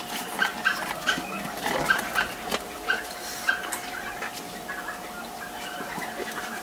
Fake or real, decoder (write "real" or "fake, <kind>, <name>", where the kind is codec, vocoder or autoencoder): real